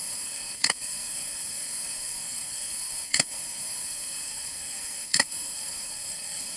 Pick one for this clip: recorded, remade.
remade